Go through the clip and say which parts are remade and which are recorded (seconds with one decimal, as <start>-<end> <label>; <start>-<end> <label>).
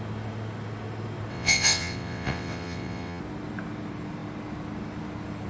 0.0-1.3 recorded; 1.3-3.2 remade; 3.2-5.5 recorded